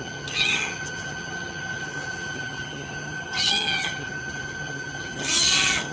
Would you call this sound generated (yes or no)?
yes